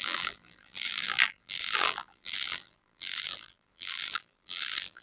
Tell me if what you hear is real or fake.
fake